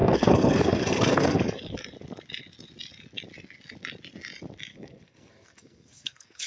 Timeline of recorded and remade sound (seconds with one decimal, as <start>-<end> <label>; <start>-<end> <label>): 0.0-1.4 remade; 1.4-4.7 recorded; 4.7-6.5 remade